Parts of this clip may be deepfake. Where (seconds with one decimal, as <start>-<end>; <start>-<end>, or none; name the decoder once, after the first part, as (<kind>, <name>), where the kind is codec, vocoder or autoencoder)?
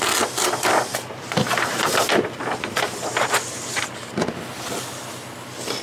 0.9-4.4 (vocoder, BigVGAN v2)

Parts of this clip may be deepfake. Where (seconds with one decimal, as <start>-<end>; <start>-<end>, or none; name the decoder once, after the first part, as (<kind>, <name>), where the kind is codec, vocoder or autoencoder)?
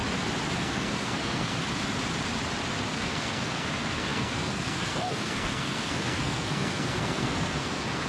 0.6-1.6 (codec, SNAC); 2.9-8.1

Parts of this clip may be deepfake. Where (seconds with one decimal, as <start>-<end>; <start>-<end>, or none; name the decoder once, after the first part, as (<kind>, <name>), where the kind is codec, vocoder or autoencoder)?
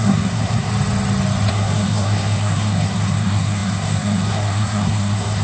0.0-0.7 (codec, SNAC); 1.5-5.4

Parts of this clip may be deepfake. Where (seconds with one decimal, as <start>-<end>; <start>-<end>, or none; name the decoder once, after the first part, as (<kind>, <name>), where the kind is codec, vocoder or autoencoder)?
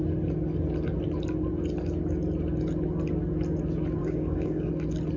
4.0-4.7 (codec, DAC)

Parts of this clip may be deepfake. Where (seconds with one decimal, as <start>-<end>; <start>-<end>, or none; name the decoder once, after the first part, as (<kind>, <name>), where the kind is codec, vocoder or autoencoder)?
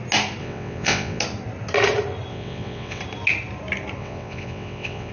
0.4-1.2 (vocoder, WaveNeXt); 2.3-3.0; 4.0-5.1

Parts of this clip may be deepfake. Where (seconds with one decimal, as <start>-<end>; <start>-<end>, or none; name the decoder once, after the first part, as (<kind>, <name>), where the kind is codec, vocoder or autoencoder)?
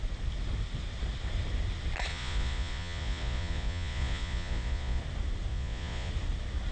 2.1-5.0 (vocoder, Vocos); 5.5-6.1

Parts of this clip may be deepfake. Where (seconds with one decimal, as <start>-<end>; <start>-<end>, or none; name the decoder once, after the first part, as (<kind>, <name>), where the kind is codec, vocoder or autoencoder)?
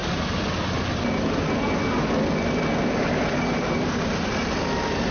none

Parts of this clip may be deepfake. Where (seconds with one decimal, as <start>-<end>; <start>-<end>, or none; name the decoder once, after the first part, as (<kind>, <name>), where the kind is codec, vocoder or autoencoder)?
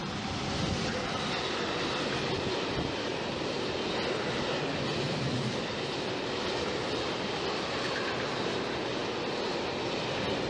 none